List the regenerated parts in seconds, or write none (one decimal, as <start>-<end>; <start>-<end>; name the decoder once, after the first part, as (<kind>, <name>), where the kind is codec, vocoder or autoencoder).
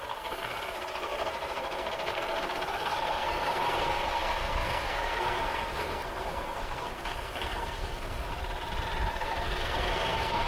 0.0-8.3 (codec, SNAC); 9.1-10.5